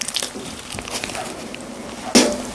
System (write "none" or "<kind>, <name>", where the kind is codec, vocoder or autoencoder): none